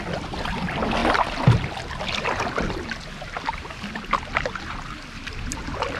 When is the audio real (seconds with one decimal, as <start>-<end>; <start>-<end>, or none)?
0.0-6.0